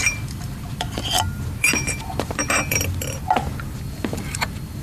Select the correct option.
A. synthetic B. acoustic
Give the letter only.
A